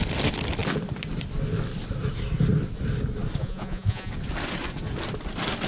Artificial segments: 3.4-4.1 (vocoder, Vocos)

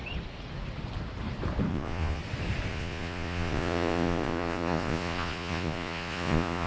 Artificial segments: 1.7-2.2 (vocoder, Vocos); 2.7-6.7

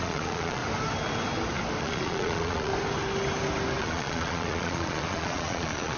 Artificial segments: 0.0-0.6 (vocoder, Vocos); 1.8-2.7; 3.8-6.0

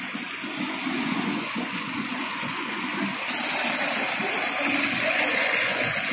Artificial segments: 0.0-2.9 (vocoder, Vocos); 4.9-6.1

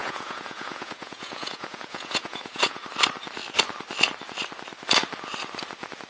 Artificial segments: 0.0-2.8 (vocoder, Vocos)

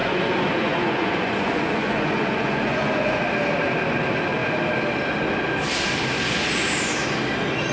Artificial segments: 0.0-3.2 (vocoder, Vocos)

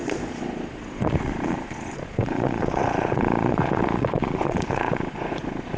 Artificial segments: 0.0-5.8 (vocoder, Vocos)

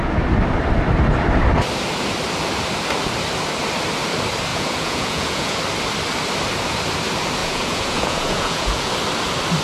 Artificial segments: 4.5-5.6 (vocoder, Vocos); 7.4-8.9